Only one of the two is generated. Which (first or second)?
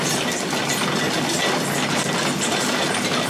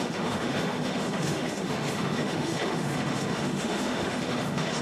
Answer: second